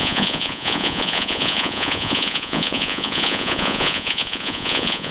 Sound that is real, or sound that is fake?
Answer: fake